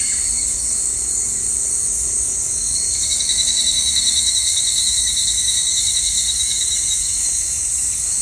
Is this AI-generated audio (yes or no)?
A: yes